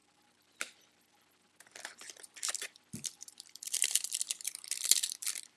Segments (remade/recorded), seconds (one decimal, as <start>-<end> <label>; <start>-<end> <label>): 0.0-5.6 remade